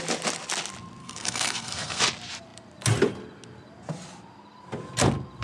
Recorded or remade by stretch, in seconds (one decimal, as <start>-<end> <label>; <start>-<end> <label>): 0.0-1.0 recorded; 1.0-2.0 remade; 2.0-5.4 recorded